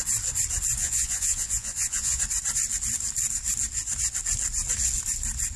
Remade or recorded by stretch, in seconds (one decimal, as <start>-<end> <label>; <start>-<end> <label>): 0.0-0.8 recorded; 0.8-2.2 remade; 2.2-5.6 recorded